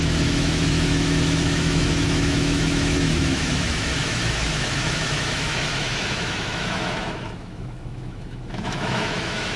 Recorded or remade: remade